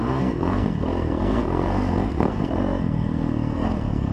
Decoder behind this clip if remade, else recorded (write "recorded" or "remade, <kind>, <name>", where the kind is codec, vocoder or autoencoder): remade, codec, SNAC